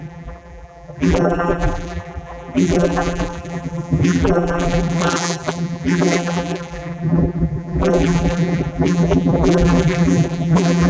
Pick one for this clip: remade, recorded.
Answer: remade